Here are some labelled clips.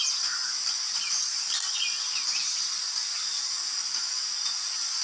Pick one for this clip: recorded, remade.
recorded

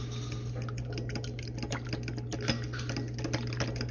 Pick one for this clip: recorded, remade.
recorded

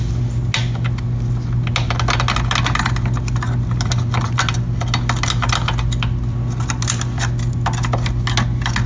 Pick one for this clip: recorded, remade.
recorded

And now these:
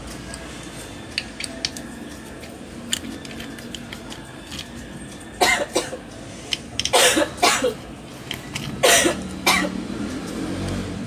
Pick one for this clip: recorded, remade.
recorded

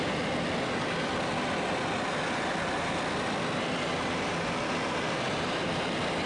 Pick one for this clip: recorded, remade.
recorded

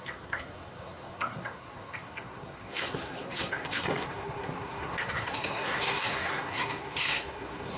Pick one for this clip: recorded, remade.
remade